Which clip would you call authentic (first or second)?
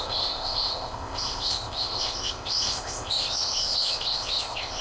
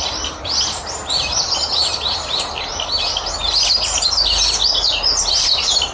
second